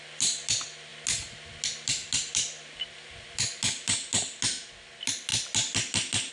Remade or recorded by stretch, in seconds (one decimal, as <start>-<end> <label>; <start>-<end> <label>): 0.0-6.3 recorded